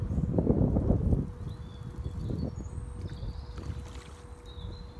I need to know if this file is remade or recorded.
recorded